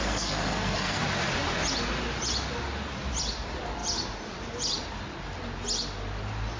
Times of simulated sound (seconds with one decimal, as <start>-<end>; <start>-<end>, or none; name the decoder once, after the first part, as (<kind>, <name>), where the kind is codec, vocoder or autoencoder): 0.0-1.0 (codec, SNAC)